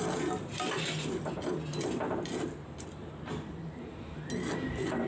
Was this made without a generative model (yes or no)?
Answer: yes